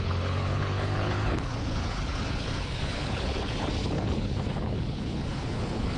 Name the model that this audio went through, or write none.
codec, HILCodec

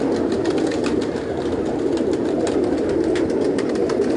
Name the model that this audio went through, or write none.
none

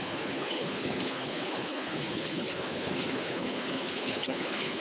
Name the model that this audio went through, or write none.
codec, HILCodec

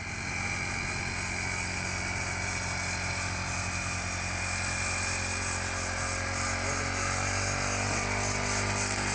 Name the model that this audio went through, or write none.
none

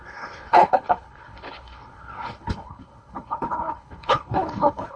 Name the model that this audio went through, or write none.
codec, HILCodec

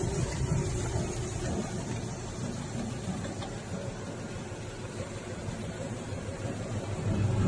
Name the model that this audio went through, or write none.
none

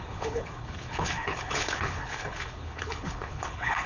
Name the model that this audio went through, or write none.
codec, HILCodec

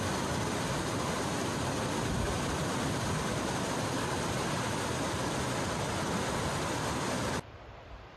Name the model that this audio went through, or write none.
none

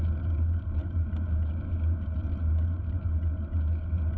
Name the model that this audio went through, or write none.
none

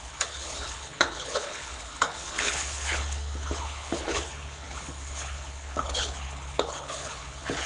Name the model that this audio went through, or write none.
codec, HILCodec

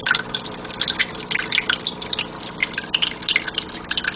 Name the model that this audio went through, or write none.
none